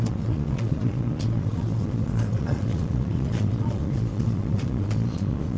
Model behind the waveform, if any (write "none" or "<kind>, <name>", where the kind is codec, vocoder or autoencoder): vocoder, Vocos